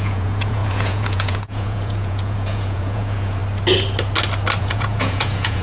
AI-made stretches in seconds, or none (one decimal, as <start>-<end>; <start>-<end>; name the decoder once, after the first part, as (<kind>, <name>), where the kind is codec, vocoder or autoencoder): 0.0-3.4 (vocoder, Vocos); 4.6-5.6